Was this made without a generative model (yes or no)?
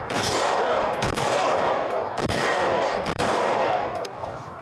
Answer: no